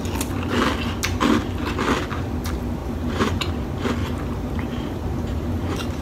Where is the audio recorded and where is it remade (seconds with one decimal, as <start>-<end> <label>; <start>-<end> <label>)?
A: 0.0-2.8 recorded; 2.8-3.5 remade; 3.5-4.0 recorded; 4.0-6.0 remade